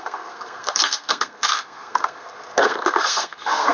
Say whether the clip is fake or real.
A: fake